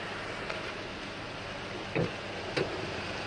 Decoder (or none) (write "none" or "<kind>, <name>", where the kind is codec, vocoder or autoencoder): none